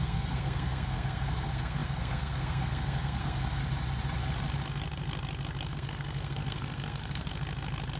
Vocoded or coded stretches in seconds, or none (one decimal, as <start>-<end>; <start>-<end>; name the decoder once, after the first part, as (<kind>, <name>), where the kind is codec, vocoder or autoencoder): 0.0-3.6 (codec, SNAC); 5.7-7.3